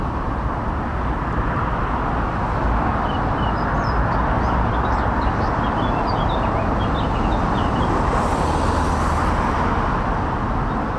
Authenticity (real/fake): real